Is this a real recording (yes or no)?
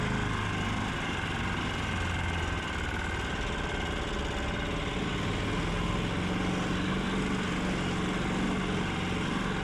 yes